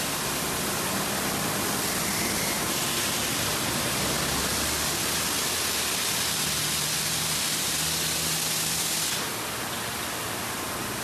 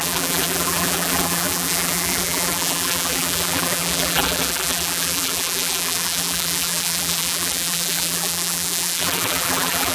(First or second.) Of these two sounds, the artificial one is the second